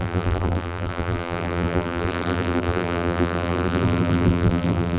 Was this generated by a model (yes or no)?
yes